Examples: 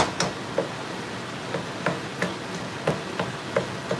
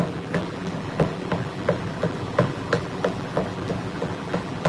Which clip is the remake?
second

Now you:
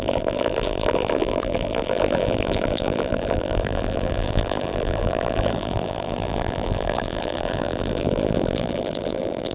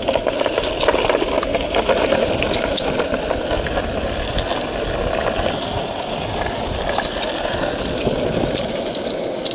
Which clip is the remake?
first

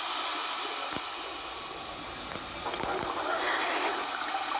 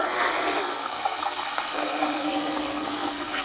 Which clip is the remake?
second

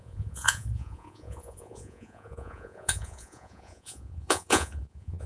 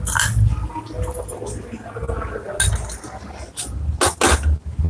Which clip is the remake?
first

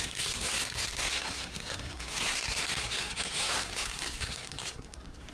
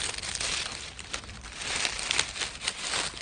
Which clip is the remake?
first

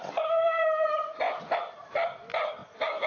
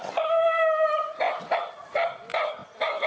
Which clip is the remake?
first